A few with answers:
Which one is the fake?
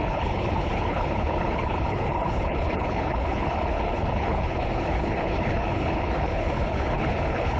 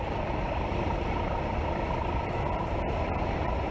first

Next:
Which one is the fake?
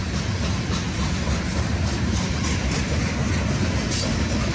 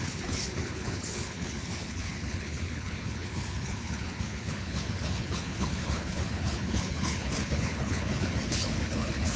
second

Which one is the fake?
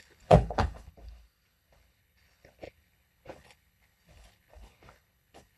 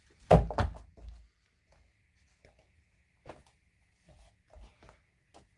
first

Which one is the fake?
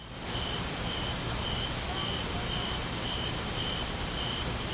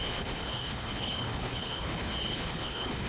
second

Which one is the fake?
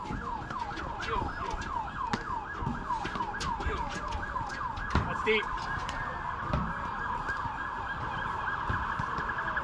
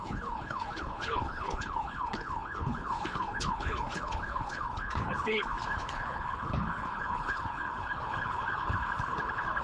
second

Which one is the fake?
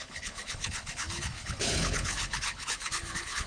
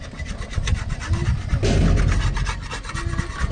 first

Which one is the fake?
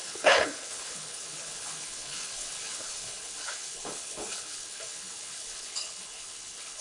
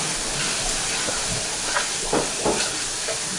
first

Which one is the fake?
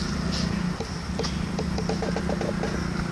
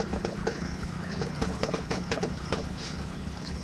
second